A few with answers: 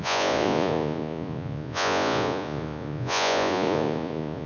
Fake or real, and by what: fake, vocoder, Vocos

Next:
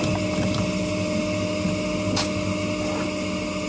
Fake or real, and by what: real